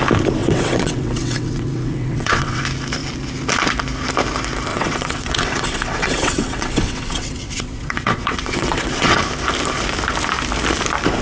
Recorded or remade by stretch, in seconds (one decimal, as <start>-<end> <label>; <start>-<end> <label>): 0.0-0.4 recorded; 0.4-2.6 remade; 2.6-4.7 recorded; 4.7-9.2 remade; 9.2-11.2 recorded